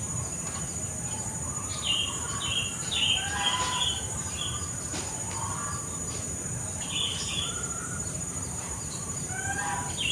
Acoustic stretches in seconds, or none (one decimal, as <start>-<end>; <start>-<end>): 0.0-7.1